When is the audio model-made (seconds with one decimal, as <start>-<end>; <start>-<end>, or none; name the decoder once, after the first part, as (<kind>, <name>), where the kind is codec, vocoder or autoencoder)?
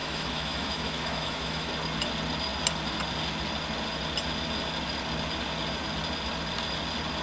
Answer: 0.0-1.7 (autoencoder, DAC-VAE)